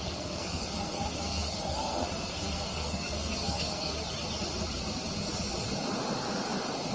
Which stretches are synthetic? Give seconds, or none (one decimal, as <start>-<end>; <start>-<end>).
0.0-3.9